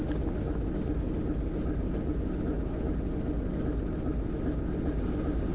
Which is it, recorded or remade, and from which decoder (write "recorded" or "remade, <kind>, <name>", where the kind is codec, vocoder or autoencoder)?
recorded